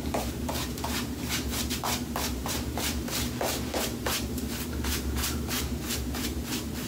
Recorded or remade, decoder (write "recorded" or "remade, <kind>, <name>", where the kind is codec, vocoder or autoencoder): remade, vocoder, BigVGAN v2